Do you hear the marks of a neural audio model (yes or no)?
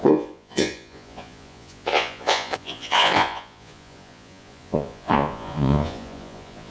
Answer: yes